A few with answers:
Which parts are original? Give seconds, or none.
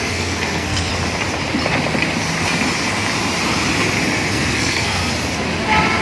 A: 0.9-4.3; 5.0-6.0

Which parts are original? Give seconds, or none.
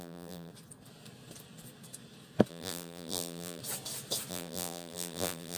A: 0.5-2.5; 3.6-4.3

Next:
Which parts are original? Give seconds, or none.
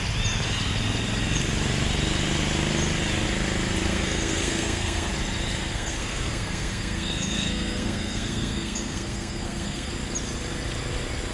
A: 0.0-3.9; 5.1-5.7; 9.9-11.3